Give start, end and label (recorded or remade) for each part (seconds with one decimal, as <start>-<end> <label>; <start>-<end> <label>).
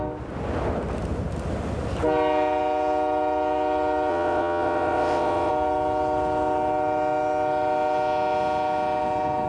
0.0-4.1 recorded; 4.1-5.5 remade; 5.5-9.5 recorded